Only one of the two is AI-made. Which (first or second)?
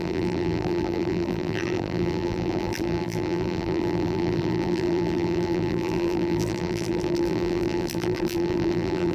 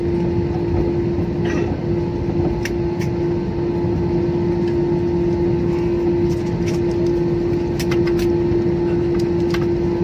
first